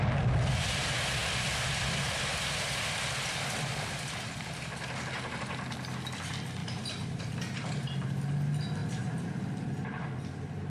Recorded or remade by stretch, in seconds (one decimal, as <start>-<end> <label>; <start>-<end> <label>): 0.0-6.6 recorded; 6.6-7.2 remade; 7.2-8.8 recorded; 8.8-9.4 remade; 9.4-10.7 recorded